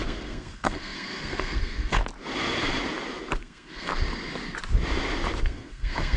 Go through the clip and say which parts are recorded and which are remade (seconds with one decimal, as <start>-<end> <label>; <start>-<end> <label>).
0.0-2.0 remade; 2.0-3.4 recorded; 3.4-3.9 remade; 3.9-5.4 recorded; 5.4-6.2 remade